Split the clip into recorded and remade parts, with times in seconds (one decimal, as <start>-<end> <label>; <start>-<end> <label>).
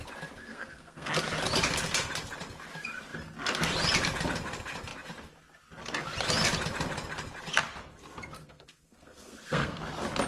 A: 0.0-0.5 recorded; 0.5-1.1 remade; 1.1-8.4 recorded; 8.4-9.8 remade; 9.8-10.3 recorded